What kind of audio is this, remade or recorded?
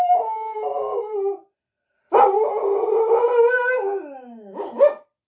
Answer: recorded